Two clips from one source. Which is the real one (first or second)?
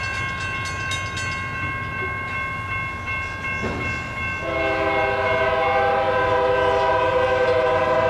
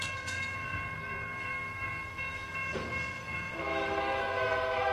first